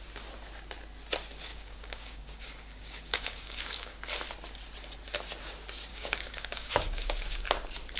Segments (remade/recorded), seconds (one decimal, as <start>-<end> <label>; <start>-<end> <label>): 0.0-1.5 recorded; 1.5-4.0 remade; 4.0-5.9 recorded; 5.9-7.4 remade; 7.4-8.0 recorded